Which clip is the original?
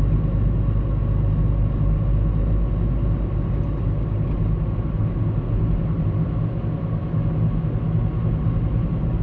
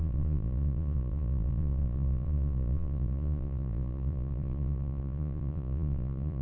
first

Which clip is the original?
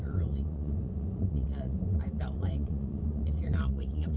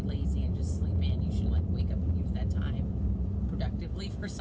second